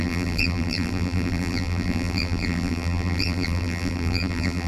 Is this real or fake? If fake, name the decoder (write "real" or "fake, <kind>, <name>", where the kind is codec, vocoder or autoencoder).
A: fake, vocoder, BigVGAN v2